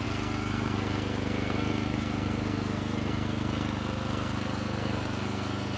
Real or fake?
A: fake